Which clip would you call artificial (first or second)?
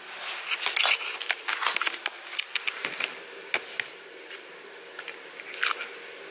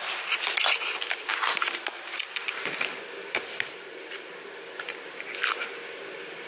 second